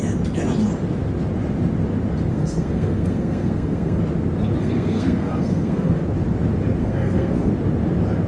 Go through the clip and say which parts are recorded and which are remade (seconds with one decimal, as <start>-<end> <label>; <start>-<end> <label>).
0.0-2.3 recorded; 2.3-4.0 remade; 4.0-4.6 recorded; 4.6-6.0 remade; 6.0-6.8 recorded; 6.8-7.5 remade; 7.5-8.3 recorded